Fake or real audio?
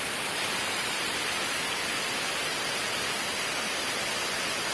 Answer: real